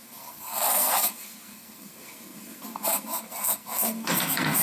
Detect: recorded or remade remade